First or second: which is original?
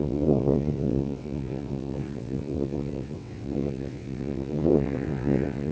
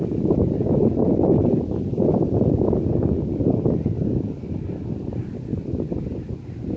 second